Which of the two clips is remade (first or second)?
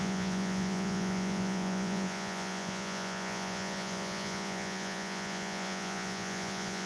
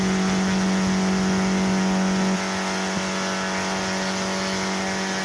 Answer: first